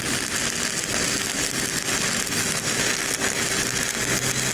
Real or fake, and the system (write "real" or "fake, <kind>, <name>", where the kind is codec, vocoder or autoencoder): real